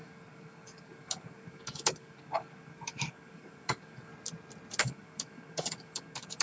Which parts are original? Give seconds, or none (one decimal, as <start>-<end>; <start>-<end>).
4.1-4.8